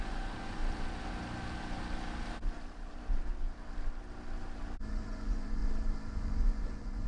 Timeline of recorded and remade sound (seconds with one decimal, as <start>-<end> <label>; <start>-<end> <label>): 0.0-0.6 remade; 0.6-4.9 recorded; 4.9-5.6 remade; 5.6-6.1 recorded; 6.1-7.1 remade

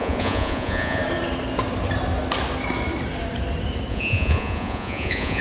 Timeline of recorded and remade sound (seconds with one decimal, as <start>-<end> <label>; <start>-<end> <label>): 0.0-1.0 remade; 1.0-3.9 recorded; 3.9-5.4 remade

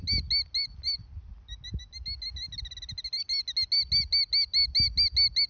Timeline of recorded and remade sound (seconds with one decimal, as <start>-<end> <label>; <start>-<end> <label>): 0.0-5.5 recorded

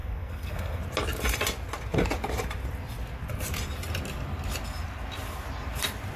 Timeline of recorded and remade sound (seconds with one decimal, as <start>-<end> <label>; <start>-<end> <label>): 0.0-0.8 remade; 0.8-6.2 recorded

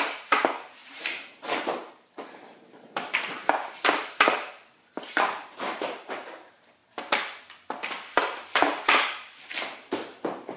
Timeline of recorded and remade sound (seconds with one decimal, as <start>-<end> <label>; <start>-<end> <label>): 0.0-6.8 remade; 6.8-9.5 recorded; 9.5-10.6 remade